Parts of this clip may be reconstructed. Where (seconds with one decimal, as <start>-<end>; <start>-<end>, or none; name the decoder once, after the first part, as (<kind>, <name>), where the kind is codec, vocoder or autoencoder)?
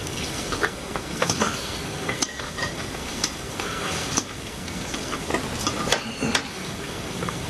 0.0-5.3 (codec, SNAC); 6.5-7.5